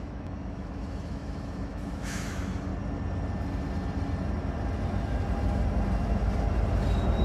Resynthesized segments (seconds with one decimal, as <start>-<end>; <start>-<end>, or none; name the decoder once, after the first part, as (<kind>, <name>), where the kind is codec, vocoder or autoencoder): 0.0-2.7 (autoencoder, DAC-VAE)